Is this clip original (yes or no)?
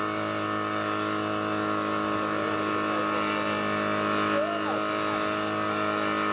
yes